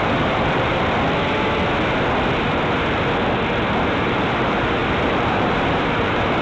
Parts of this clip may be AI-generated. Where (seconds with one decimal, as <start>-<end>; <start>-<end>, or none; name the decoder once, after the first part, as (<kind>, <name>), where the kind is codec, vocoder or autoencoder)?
0.0-0.8 (vocoder, BigVGAN v2); 3.8-6.4